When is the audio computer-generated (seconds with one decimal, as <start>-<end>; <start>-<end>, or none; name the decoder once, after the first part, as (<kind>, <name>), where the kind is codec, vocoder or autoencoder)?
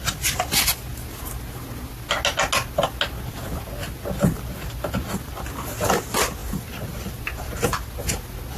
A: none